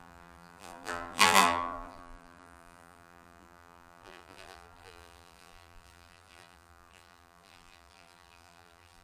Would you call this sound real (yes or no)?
no